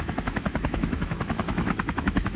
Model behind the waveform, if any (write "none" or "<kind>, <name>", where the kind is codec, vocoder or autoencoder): autoencoder, DAC-VAE